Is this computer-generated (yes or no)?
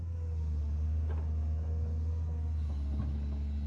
no